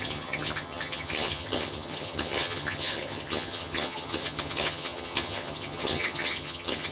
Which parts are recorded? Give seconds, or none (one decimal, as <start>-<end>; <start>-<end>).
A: none